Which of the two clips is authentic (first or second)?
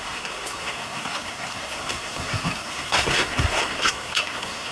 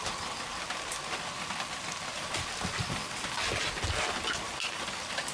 second